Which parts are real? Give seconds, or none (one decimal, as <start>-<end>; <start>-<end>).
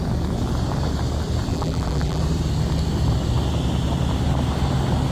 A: 0.0-1.5; 2.2-5.1